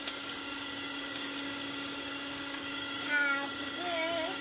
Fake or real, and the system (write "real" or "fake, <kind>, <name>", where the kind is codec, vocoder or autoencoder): fake, codec, DAC